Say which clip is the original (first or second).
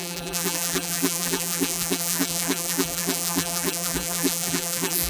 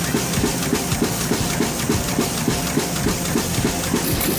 second